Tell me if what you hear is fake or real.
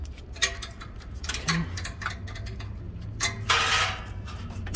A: real